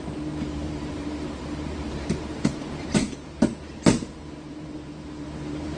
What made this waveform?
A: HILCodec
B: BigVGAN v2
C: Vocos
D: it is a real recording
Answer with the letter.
B